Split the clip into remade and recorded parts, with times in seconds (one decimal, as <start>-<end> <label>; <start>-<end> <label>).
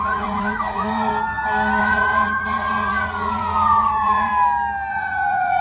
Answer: 0.0-1.1 remade; 1.1-1.8 recorded; 1.8-4.3 remade; 4.3-4.9 recorded; 4.9-5.6 remade